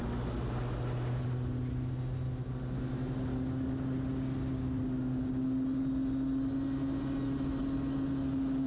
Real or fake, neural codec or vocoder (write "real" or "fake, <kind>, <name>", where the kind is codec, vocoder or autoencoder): real